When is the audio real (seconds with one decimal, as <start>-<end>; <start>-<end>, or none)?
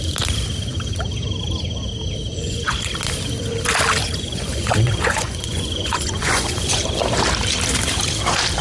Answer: 0.0-2.3; 2.8-4.0; 6.8-8.6